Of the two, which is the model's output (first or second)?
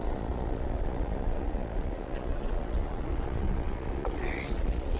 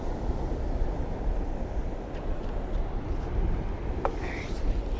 first